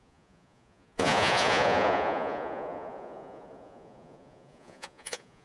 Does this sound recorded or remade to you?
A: remade